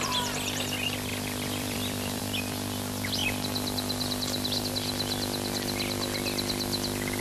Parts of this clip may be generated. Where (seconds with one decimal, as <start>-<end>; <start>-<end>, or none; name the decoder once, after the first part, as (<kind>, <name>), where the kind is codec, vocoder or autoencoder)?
1.1-2.2 (vocoder, BigVGAN v2)

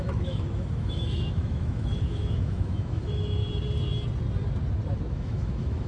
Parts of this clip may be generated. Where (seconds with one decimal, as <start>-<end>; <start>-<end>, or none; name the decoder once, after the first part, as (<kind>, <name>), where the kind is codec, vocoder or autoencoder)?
0.0-3.4 (autoencoder, DAC-VAE); 5.1-5.9

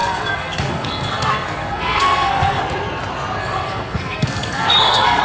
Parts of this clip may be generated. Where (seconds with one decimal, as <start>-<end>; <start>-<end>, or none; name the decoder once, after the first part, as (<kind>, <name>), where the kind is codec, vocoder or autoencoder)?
0.0-2.6 (codec, SNAC); 3.4-5.2

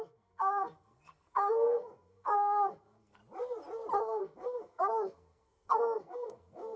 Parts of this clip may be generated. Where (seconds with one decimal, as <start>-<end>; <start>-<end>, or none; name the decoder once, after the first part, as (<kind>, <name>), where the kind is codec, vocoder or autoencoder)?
0.0-3.2 (codec, SNAC); 4.0-6.8

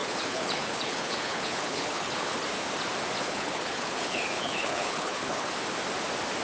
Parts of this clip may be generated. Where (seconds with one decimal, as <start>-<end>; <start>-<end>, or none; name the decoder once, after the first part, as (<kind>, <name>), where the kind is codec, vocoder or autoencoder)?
0.0-2.4 (codec, HILCodec); 3.2-5.5

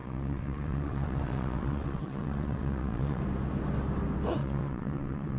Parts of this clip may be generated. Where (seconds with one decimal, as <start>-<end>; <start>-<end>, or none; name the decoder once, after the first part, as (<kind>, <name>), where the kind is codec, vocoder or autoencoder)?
0.0-3.2 (vocoder, WaveNeXt); 4.4-5.4

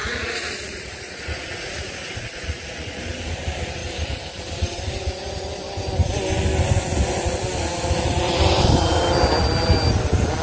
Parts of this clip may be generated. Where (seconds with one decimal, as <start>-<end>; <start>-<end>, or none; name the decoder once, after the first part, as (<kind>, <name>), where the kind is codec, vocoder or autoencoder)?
0.0-3.0 (vocoder, Vocos)

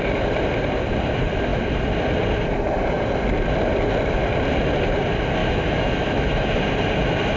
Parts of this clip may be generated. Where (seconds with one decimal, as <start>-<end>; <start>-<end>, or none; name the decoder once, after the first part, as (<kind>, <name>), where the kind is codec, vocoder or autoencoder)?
5.4-6.6 (autoencoder, DAC-VAE)